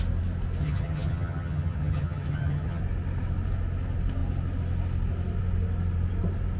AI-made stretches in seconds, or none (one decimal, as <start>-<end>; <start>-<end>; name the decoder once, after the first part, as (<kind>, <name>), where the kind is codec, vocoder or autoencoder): 0.6-2.8 (vocoder, HiFi-GAN)